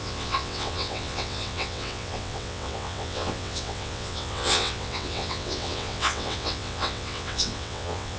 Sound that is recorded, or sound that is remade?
remade